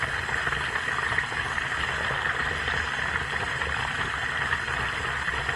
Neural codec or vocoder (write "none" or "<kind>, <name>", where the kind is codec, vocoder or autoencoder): none